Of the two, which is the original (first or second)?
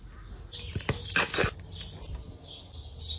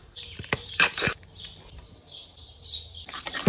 first